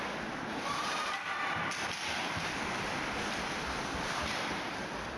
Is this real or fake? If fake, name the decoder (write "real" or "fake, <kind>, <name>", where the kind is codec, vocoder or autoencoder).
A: real